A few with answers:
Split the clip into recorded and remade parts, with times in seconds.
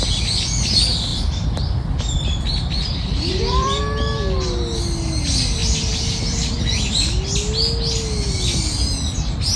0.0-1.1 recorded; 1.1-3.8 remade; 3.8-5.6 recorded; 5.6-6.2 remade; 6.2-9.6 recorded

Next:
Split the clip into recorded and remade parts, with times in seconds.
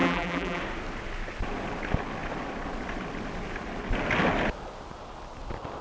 0.0-0.6 remade; 0.6-5.8 recorded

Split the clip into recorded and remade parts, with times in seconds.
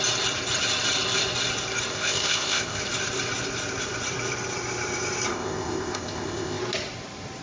0.0-1.9 recorded; 1.9-2.8 remade; 2.8-5.3 recorded; 5.3-6.6 remade; 6.6-7.4 recorded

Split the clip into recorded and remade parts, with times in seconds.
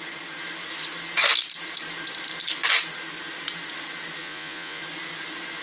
0.0-4.2 recorded; 4.2-4.8 remade; 4.8-5.6 recorded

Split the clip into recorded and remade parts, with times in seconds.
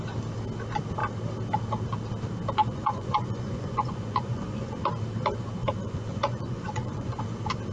0.0-2.6 recorded; 2.6-4.8 remade; 4.8-5.6 recorded; 5.6-7.2 remade; 7.2-7.7 recorded